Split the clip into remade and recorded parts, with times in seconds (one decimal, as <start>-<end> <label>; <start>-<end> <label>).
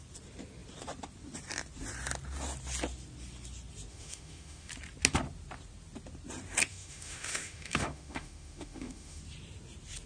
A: 0.0-3.9 recorded; 3.9-4.7 remade; 4.7-6.7 recorded; 6.7-9.2 remade; 9.2-10.1 recorded